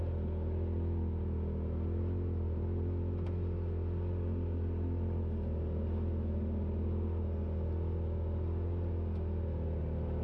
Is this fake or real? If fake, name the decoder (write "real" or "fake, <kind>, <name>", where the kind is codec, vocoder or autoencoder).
real